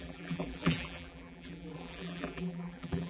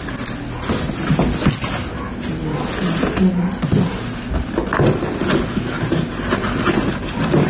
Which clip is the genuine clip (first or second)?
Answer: second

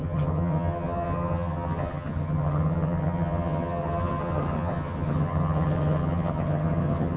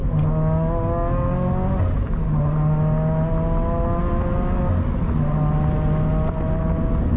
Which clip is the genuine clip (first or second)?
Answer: second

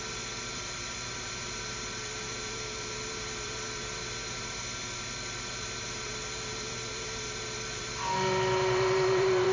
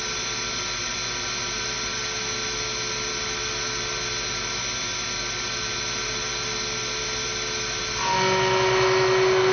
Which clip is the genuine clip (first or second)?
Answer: second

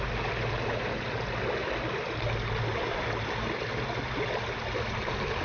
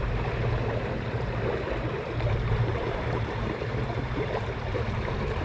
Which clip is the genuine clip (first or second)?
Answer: first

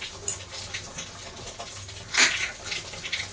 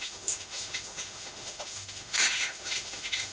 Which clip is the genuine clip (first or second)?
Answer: first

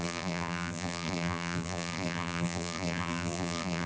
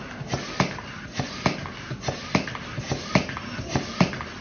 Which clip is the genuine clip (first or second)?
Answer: second